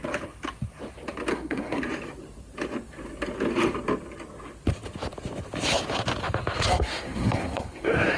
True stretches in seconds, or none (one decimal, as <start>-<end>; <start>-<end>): 0.0-1.3; 1.8-6.7